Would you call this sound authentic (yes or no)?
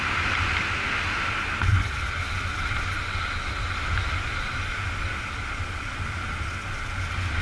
yes